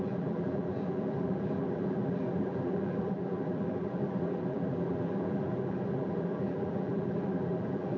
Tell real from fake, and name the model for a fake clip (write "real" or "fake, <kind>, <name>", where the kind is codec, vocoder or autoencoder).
fake, vocoder, BigVGAN v2